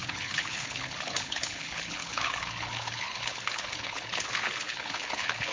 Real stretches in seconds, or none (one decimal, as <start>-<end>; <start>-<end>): none